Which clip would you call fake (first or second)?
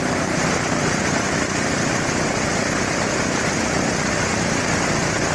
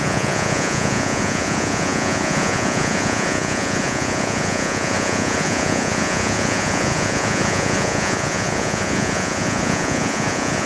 second